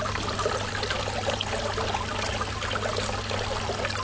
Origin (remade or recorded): recorded